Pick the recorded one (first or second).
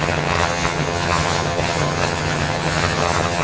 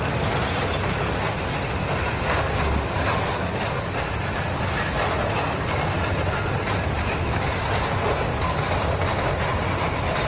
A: second